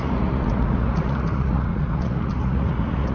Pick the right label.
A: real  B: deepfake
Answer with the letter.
B